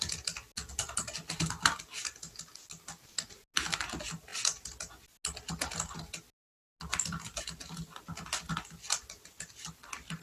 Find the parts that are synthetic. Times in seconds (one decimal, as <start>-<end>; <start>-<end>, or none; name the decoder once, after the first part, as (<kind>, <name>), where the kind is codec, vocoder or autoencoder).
none